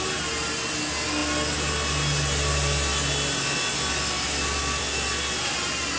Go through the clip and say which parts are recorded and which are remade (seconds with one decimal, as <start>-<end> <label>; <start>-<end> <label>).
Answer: 0.0-6.0 recorded

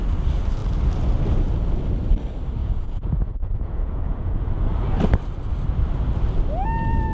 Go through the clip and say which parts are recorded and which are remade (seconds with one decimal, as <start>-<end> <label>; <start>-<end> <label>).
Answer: 0.0-2.6 recorded; 2.6-4.5 remade; 4.5-7.1 recorded

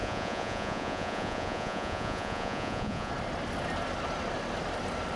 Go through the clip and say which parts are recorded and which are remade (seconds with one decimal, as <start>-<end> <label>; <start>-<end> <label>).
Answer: 0.0-3.1 remade; 3.1-5.2 recorded

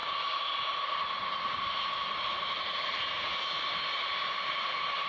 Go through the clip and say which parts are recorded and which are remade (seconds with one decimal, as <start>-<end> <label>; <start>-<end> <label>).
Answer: 0.0-5.1 recorded